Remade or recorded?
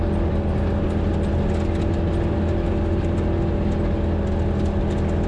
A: recorded